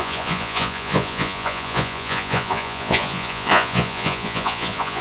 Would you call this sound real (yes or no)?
no